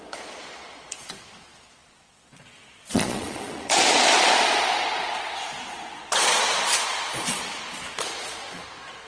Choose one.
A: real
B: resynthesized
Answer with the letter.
B